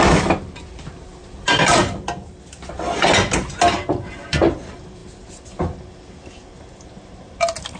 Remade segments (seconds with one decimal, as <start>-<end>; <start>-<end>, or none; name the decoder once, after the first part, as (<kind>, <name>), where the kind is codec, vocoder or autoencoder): none